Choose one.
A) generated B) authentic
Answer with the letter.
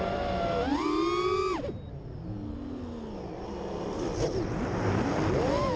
B